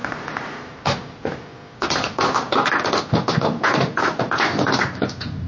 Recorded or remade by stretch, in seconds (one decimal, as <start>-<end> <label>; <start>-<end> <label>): 0.0-5.5 recorded